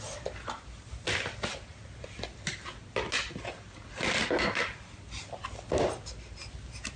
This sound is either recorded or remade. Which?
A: recorded